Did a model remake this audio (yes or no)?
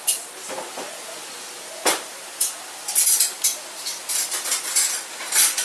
no